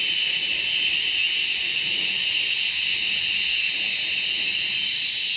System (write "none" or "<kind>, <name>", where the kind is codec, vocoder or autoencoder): none